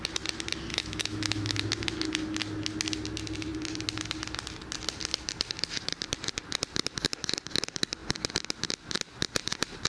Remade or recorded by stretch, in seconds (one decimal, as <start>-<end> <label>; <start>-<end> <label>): 0.0-0.7 recorded; 0.7-1.6 remade; 1.6-9.9 recorded